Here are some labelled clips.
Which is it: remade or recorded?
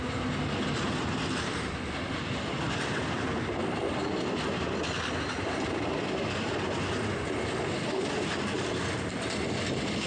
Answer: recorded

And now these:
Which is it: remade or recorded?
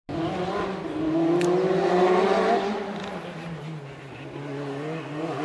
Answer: recorded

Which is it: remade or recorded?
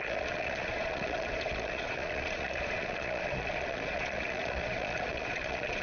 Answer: remade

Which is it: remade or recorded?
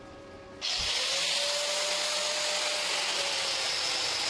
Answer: recorded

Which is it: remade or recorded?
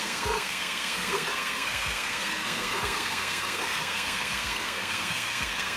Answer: remade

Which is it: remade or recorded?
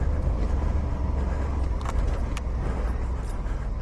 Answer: recorded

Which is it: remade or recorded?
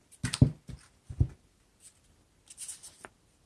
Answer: recorded